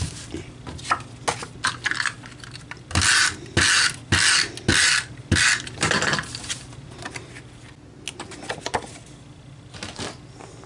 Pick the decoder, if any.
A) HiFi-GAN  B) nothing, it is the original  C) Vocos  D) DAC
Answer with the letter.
B